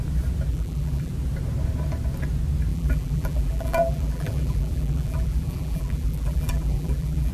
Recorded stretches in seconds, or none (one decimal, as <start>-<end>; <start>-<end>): 0.0-0.5; 1.1-2.7

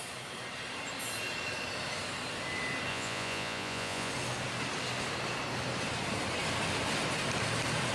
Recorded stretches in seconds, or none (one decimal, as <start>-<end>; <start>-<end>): 0.0-2.9; 4.1-7.9

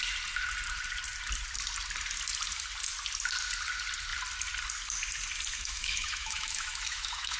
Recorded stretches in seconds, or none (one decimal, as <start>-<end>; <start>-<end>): 0.0-5.5

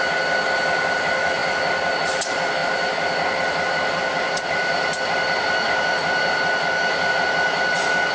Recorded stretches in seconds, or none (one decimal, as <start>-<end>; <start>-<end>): 0.0-8.1